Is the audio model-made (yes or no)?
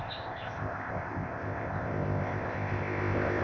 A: yes